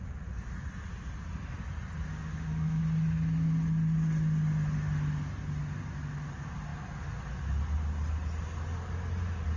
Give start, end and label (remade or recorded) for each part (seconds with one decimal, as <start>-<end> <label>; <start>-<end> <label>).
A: 0.0-2.1 recorded; 2.1-2.8 remade; 2.8-9.6 recorded